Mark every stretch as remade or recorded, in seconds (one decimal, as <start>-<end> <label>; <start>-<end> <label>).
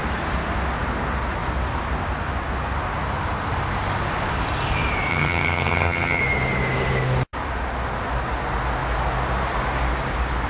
0.0-5.1 recorded; 5.1-6.2 remade; 6.2-10.5 recorded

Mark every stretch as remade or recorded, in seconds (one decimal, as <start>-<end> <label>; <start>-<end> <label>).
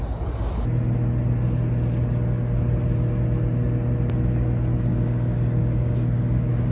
0.0-4.9 recorded; 4.9-6.7 remade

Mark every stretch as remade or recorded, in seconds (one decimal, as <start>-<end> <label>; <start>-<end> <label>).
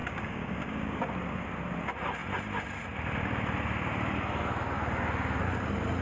0.0-1.0 remade; 1.0-6.0 recorded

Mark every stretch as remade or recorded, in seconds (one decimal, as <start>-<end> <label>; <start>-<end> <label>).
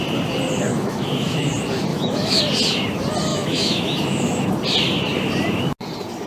0.0-0.7 recorded; 0.7-1.5 remade; 1.5-1.9 recorded; 1.9-2.4 remade; 2.4-3.3 recorded; 3.3-4.5 remade; 4.5-6.3 recorded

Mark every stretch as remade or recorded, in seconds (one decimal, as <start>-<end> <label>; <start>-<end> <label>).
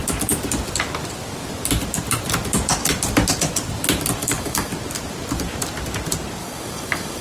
0.0-4.2 recorded; 4.2-4.7 remade; 4.7-6.4 recorded; 6.4-7.2 remade